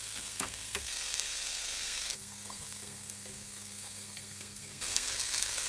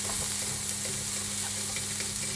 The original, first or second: second